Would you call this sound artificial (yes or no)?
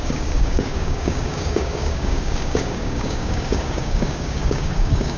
yes